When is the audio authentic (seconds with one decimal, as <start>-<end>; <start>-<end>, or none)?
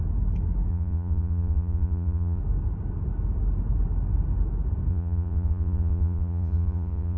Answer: 0.0-0.7; 2.4-4.9